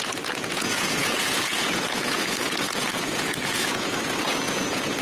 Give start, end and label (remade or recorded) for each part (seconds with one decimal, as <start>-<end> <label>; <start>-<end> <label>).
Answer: 0.0-5.0 remade